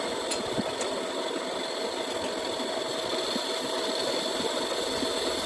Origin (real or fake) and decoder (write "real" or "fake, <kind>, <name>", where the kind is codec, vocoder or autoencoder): real